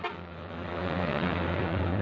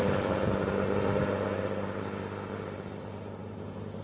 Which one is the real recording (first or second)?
second